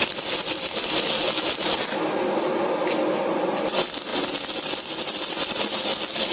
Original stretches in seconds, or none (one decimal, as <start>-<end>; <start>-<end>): 0.0-6.3